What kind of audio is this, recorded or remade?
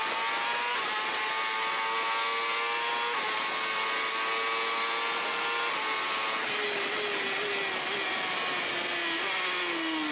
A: recorded